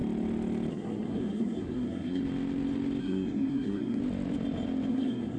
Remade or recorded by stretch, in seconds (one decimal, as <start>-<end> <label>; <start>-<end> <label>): 0.0-0.7 recorded; 0.7-2.2 remade; 2.2-3.0 recorded; 3.0-4.0 remade; 4.0-4.9 recorded; 4.9-5.4 remade